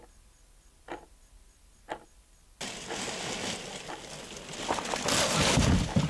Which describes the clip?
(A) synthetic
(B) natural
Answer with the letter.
B